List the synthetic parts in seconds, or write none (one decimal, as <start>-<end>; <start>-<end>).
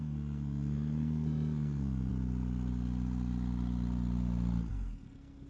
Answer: 0.0-2.1; 4.7-5.5